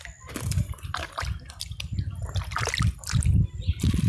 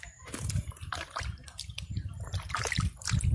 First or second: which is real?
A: first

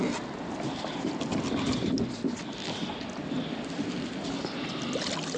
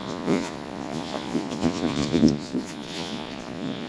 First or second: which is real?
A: first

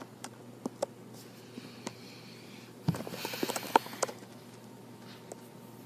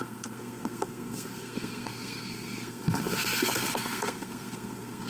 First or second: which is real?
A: first